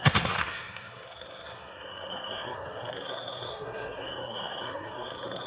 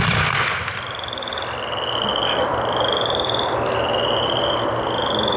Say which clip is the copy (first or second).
first